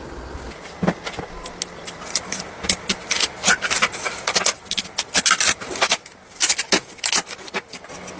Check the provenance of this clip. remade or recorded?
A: recorded